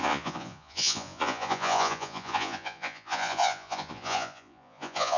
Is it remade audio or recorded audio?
remade